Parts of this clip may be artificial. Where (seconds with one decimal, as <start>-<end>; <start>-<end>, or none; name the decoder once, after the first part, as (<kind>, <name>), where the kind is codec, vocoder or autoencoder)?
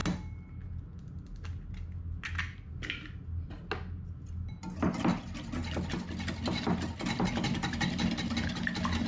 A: none